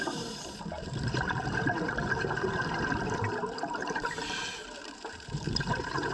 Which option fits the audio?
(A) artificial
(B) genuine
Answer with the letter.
A